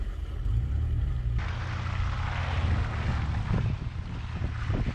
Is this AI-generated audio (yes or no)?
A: no